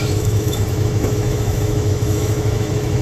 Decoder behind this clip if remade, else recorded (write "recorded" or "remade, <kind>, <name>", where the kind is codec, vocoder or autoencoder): remade, autoencoder, DAC-VAE